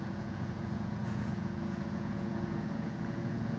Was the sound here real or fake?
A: fake